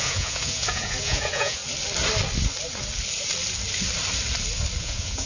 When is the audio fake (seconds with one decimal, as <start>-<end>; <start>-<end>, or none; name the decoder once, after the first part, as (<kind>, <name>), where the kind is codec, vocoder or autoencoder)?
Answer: 0.0-1.6 (vocoder, Vocos); 4.8-5.3